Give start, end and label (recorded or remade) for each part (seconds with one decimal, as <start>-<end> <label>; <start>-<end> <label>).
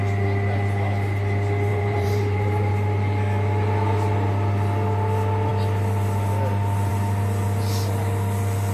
0.0-1.7 recorded; 1.7-2.7 remade; 2.7-8.7 recorded